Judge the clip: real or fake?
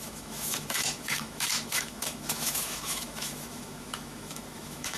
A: fake